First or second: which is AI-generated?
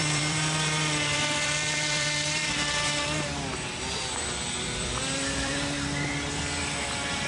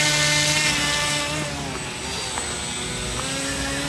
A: first